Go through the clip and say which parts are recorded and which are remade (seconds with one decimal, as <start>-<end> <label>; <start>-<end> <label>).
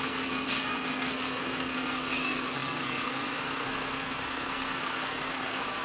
0.0-5.8 remade